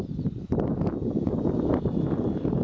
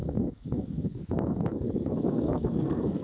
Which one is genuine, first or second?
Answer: first